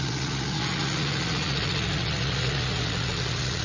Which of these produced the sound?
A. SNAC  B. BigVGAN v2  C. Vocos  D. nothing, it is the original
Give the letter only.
C